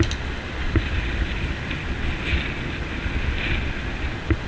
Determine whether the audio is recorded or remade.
recorded